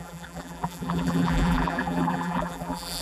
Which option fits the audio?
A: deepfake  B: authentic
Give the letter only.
A